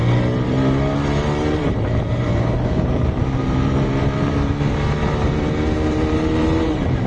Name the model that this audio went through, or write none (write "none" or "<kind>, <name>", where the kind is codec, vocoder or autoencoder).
vocoder, BigVGAN v2